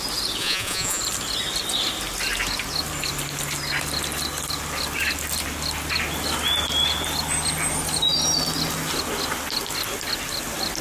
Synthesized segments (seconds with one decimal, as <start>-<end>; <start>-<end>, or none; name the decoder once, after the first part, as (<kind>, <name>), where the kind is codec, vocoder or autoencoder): 0.4-1.0 (vocoder, Vocos)